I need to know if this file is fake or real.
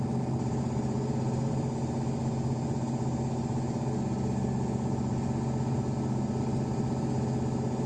real